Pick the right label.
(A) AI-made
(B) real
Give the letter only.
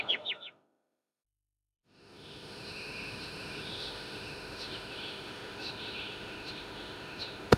A